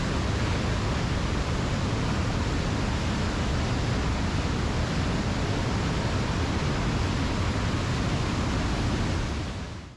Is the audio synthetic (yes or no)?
no